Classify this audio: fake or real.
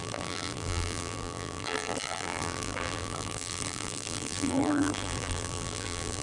fake